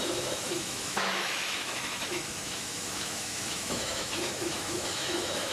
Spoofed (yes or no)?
yes